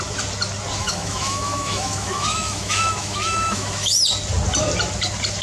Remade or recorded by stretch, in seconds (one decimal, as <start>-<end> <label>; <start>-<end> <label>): 0.0-0.8 recorded; 0.8-4.0 remade; 4.0-5.4 recorded